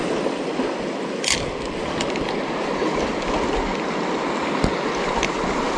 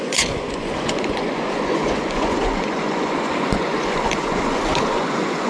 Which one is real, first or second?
first